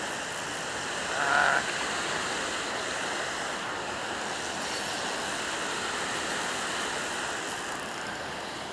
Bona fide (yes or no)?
yes